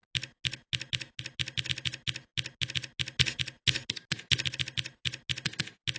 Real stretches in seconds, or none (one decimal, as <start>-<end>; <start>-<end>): 0.0-6.0